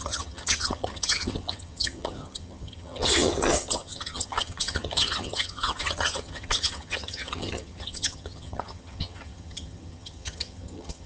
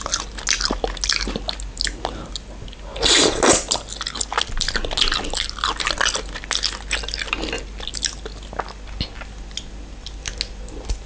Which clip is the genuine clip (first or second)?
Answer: second